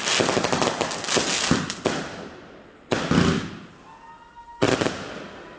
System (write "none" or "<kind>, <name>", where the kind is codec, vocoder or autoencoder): none